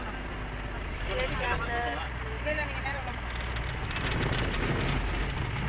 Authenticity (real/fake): real